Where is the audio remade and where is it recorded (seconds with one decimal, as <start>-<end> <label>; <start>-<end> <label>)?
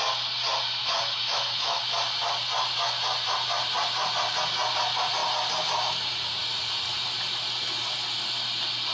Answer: 0.0-0.8 recorded; 0.8-1.8 remade; 1.8-8.9 recorded